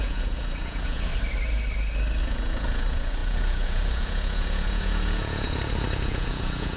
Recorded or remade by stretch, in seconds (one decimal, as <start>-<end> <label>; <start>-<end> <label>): 0.0-1.1 remade; 1.1-2.2 recorded; 2.2-6.8 remade

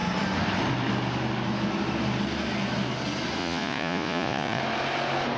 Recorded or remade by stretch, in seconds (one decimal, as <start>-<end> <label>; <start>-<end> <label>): 0.0-3.4 recorded; 3.4-4.6 remade; 4.6-5.4 recorded

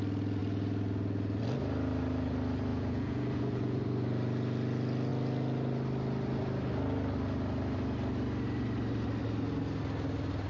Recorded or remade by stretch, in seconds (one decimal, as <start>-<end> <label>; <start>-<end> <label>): 0.0-2.7 recorded; 2.7-3.8 remade; 3.8-10.5 recorded

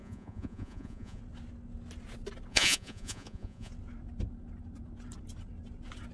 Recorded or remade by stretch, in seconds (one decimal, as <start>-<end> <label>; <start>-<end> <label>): 0.0-1.2 remade; 1.2-2.5 recorded; 2.5-3.7 remade; 3.7-6.1 recorded

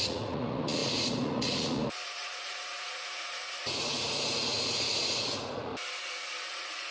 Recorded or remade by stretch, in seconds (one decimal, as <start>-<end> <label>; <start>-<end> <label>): 0.0-5.7 remade; 5.7-6.5 recorded; 6.5-6.9 remade

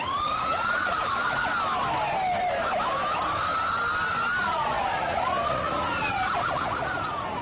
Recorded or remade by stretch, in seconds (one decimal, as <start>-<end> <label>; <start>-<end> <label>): 0.0-1.5 remade; 1.5-4.4 recorded; 4.4-7.4 remade